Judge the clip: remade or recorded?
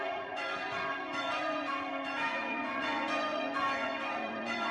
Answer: remade